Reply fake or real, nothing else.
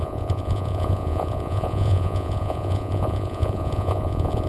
fake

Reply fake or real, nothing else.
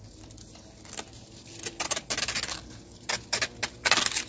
real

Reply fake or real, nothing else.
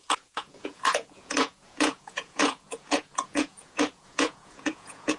fake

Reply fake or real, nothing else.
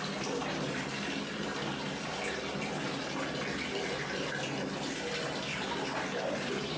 real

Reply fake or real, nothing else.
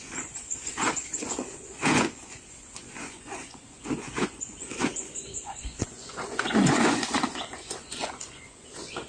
fake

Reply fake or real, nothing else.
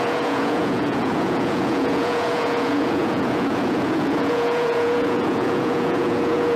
fake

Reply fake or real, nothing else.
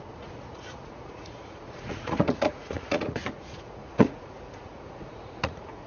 fake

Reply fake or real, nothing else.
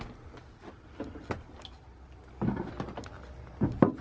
real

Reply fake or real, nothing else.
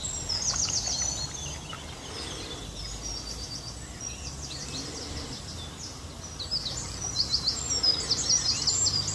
real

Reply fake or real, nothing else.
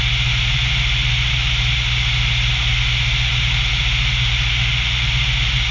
real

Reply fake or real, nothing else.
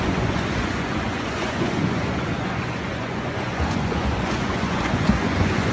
fake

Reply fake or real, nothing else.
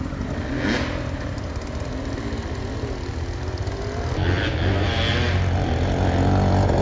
real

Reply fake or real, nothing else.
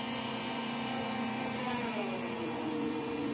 fake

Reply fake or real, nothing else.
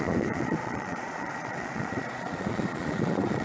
fake